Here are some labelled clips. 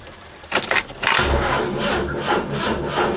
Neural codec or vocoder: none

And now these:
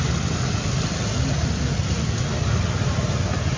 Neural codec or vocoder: none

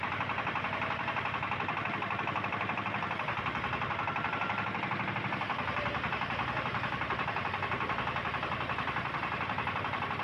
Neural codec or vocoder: vocoder, BigVGAN v2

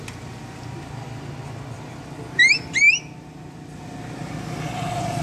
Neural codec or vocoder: none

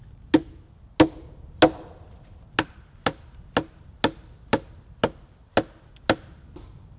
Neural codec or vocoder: none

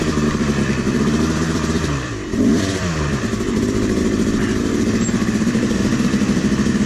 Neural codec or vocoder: vocoder, BigVGAN v2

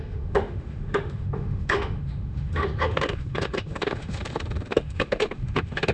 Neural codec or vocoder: autoencoder, DAC-VAE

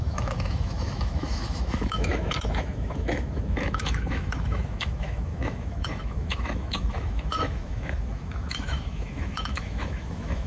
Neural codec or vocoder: autoencoder, DAC-VAE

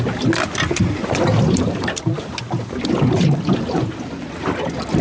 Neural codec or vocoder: none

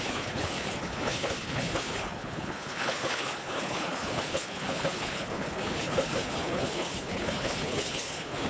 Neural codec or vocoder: codec, HILCodec